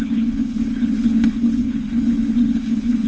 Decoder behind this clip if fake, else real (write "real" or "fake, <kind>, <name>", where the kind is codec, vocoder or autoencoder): fake, codec, HILCodec